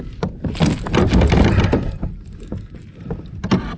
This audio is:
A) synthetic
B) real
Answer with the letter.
B